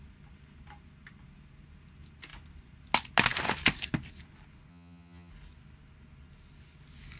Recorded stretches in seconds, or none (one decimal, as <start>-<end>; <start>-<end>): 0.0-4.7; 5.3-7.2